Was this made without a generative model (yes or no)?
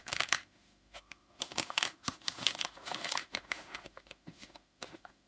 no